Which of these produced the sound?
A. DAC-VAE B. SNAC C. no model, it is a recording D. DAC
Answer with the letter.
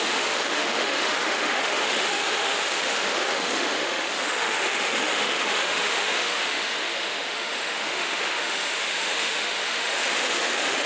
A